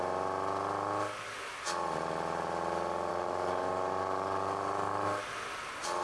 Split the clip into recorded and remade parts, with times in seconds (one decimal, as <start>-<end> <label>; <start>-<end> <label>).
0.0-3.1 recorded; 3.1-5.2 remade; 5.2-6.0 recorded